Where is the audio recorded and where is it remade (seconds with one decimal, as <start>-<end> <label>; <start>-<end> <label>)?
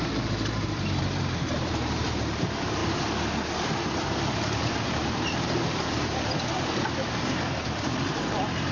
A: 0.0-2.8 remade; 2.8-4.6 recorded; 4.6-8.7 remade